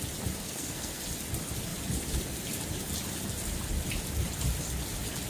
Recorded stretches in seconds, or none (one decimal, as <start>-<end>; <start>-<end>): 0.0-0.4; 1.0-5.3